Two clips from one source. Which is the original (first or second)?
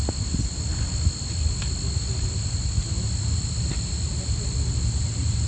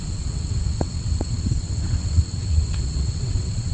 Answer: first